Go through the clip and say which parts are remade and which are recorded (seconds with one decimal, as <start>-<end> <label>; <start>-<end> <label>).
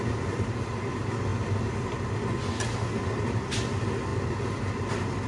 0.0-5.3 recorded